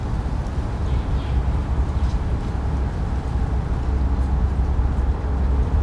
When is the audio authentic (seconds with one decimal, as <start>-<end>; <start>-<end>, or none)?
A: 0.0-0.8; 3.7-5.1